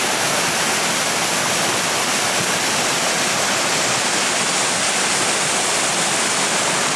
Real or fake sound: real